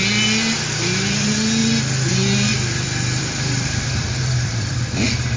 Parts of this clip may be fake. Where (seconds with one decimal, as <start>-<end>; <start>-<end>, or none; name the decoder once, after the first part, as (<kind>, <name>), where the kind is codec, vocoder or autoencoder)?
2.5-5.4 (vocoder, BigVGAN v2)